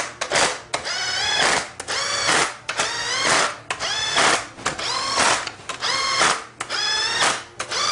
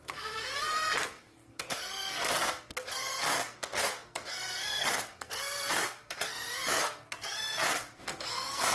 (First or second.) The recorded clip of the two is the first